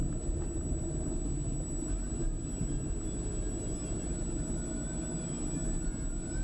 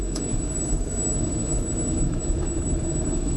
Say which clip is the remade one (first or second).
second